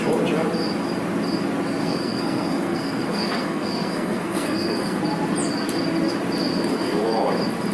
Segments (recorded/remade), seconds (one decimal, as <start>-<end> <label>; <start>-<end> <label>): 0.0-1.8 recorded; 1.8-5.0 remade; 5.0-6.5 recorded; 6.5-7.3 remade; 7.3-7.7 recorded